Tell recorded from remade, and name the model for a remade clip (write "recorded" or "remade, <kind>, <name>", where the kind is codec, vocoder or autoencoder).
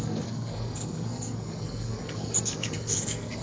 remade, codec, SNAC